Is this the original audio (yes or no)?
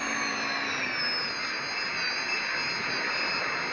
yes